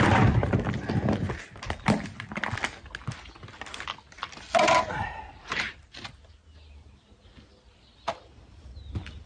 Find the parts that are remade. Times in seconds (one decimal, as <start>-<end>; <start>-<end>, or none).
5.0-5.8